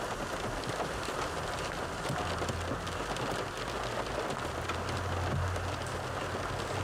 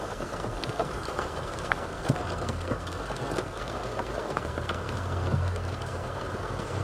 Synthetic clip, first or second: second